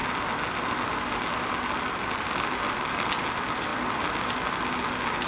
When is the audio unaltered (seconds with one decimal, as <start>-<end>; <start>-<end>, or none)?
0.0-5.3